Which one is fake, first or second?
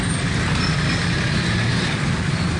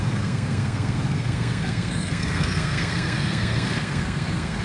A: second